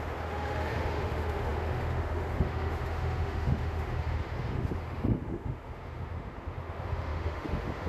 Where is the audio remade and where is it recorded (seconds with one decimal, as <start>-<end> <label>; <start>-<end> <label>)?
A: 0.0-7.9 remade